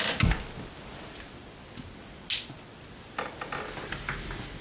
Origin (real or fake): real